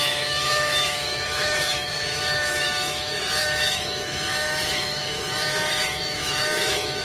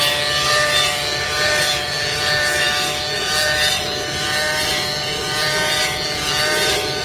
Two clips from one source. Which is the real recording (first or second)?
second